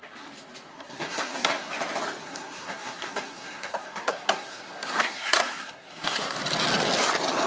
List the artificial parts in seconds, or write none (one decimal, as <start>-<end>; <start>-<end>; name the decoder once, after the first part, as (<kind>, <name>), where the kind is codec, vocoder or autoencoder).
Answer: 0.7-1.7 (codec, SNAC); 2.2-6.4